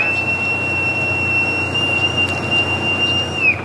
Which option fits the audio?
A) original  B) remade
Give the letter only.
A